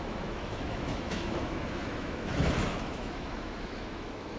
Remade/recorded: remade